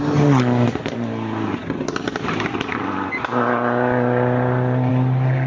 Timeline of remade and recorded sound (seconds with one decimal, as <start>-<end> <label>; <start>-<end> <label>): 0.0-5.5 recorded